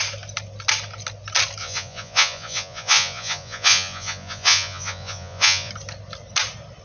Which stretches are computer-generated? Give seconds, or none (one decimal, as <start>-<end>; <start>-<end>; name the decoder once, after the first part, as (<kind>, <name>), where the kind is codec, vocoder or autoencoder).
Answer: 1.6-5.7 (vocoder, Vocos)